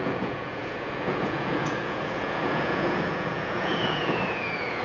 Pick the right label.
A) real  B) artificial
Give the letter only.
B